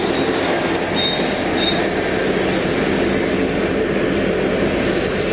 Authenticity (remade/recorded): recorded